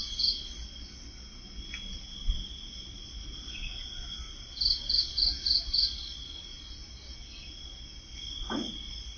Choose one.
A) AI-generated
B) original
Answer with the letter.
B